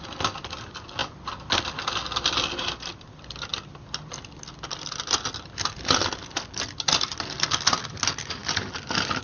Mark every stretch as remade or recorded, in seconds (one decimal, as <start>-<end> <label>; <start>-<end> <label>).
0.0-9.2 recorded